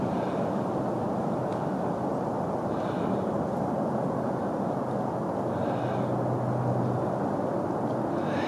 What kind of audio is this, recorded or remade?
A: recorded